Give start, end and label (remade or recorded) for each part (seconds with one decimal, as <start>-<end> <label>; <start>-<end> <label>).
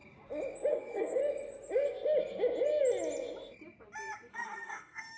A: 0.0-0.7 recorded; 0.7-1.2 remade; 1.2-4.3 recorded; 4.3-5.2 remade